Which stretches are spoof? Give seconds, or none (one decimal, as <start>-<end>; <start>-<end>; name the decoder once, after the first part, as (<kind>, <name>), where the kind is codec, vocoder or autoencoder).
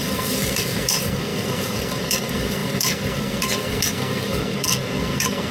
0.0-5.5 (codec, SNAC)